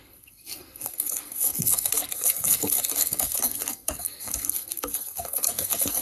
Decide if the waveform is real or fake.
fake